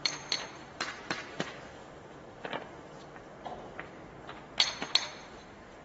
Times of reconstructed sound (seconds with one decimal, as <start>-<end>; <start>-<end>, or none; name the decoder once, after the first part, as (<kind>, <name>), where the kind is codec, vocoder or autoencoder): 0.0-1.8 (vocoder, BigVGAN v2); 5.3-5.8